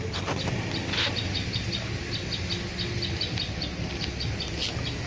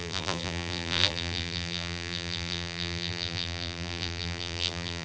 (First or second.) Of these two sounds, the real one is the first